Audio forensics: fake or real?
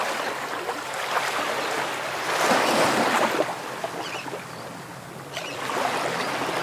real